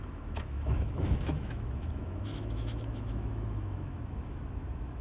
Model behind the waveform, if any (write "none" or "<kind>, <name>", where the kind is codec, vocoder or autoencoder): autoencoder, DAC-VAE